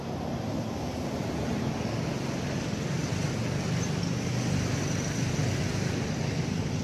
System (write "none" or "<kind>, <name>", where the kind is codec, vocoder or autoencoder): none